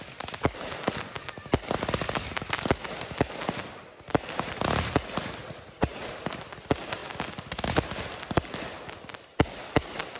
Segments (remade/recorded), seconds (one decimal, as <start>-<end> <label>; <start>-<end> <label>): 0.0-5.4 recorded; 5.4-6.1 remade; 6.1-10.2 recorded